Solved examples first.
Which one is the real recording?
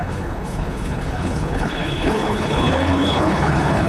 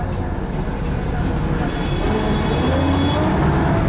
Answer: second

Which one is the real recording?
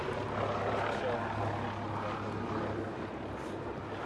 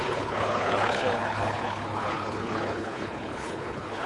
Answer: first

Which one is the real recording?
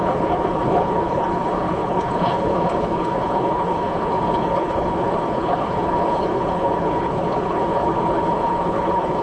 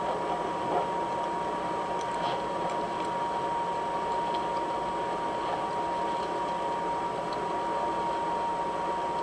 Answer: second